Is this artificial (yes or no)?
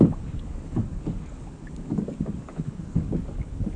yes